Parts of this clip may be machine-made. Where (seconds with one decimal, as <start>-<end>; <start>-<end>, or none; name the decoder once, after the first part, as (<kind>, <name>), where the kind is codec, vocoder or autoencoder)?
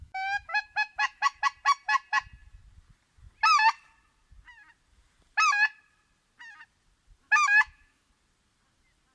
0.0-1.4 (autoencoder, DAC-VAE); 7.2-8.1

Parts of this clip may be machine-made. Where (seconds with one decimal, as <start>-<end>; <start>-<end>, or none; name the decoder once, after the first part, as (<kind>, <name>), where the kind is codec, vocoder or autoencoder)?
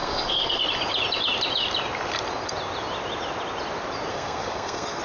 0.0-0.6 (codec, SNAC); 4.1-5.0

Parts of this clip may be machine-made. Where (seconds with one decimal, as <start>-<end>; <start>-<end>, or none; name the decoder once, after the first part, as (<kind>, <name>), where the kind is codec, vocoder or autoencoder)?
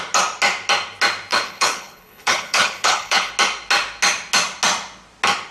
1.3-3.3 (codec, HILCodec)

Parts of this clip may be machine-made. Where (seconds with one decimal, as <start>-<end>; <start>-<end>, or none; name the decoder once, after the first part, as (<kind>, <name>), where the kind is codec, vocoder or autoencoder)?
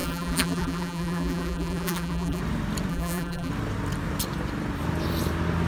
0.0-2.4 (vocoder, BigVGAN v2); 2.9-3.5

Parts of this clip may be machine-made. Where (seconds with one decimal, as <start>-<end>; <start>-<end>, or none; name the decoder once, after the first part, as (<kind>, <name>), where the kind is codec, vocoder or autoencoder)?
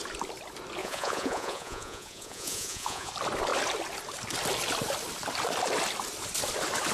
0.8-3.1 (vocoder, Vocos)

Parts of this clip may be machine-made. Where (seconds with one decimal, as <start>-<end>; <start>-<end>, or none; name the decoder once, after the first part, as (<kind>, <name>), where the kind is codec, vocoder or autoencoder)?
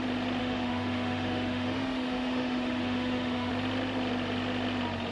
0.4-3.5 (autoencoder, DAC-VAE)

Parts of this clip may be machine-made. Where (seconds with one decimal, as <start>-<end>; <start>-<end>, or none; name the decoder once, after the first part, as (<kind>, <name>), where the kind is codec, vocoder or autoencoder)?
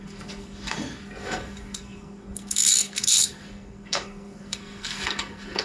0.0-5.6 (codec, SNAC)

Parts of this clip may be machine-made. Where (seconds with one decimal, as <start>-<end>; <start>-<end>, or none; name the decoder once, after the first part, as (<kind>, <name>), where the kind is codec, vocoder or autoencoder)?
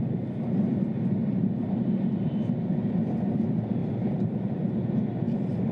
3.8-5.0 (vocoder, BigVGAN v2)